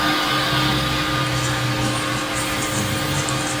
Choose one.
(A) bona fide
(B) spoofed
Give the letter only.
A